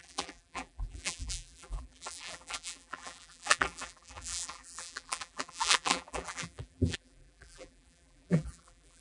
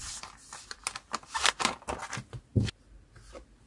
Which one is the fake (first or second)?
first